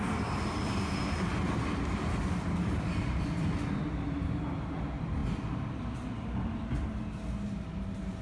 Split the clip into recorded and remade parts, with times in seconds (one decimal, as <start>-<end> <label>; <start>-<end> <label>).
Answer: 0.0-8.2 recorded